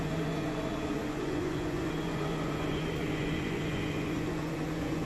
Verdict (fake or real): fake